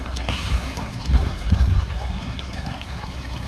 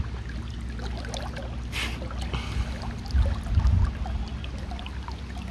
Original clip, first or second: second